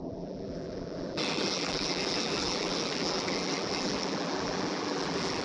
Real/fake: fake